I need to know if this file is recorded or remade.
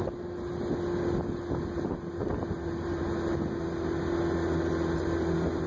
recorded